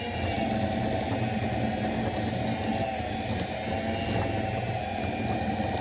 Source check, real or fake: real